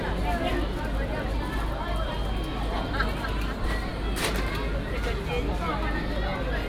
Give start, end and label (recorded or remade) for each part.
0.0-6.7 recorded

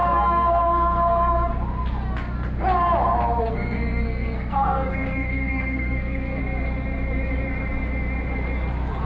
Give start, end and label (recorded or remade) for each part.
0.0-1.5 remade; 1.5-3.4 recorded; 3.4-6.4 remade; 6.4-9.0 recorded

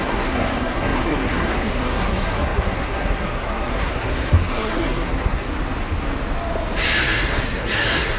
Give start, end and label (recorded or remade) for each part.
0.0-5.5 remade; 5.5-7.0 recorded; 7.0-8.2 remade

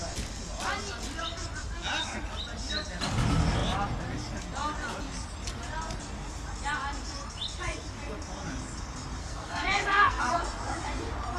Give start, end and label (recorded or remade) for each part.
0.0-9.2 recorded; 9.2-10.4 remade; 10.4-11.4 recorded

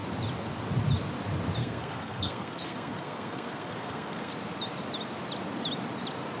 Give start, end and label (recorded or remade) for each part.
0.0-1.6 recorded; 1.6-4.3 remade; 4.3-6.4 recorded